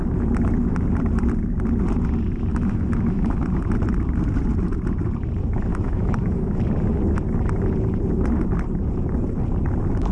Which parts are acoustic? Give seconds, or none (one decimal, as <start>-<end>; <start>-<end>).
0.0-2.5; 3.6-5.7; 6.6-10.1

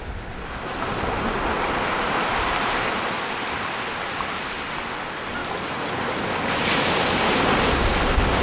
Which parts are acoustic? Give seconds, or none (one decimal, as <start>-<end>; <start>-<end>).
0.0-8.4

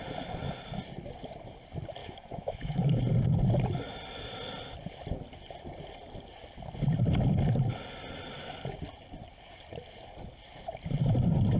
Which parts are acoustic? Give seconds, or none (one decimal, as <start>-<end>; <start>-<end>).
0.0-2.0; 3.0-11.6

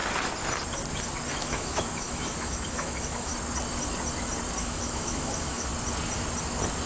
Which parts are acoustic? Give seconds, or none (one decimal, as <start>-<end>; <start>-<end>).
0.0-1.3; 3.3-4.6; 5.7-6.9

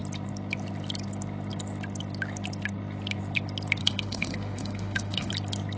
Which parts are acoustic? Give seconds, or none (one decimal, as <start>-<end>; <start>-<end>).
0.0-3.8; 5.3-5.8

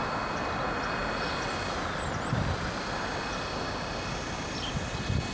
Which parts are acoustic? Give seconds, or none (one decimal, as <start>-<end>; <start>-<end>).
0.0-5.3

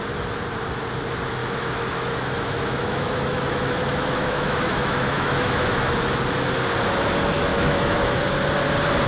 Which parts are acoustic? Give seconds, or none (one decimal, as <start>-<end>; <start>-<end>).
0.0-1.4; 6.2-7.5; 8.2-9.1